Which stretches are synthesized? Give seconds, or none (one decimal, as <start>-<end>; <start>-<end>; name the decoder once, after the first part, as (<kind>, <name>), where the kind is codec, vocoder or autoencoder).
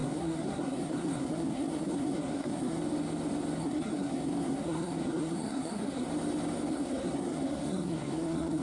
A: 0.0-2.8 (codec, SNAC); 3.6-6.1; 6.7-8.6